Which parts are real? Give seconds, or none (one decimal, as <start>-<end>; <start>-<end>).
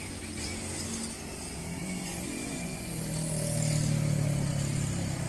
0.0-1.8; 2.9-5.3